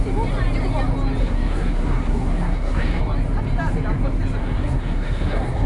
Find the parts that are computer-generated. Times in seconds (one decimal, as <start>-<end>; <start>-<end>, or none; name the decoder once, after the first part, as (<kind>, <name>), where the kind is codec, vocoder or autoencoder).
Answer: 1.2-3.0 (codec, SNAC); 4.4-5.7